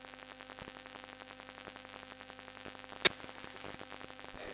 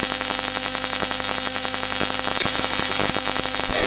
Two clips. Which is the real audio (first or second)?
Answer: first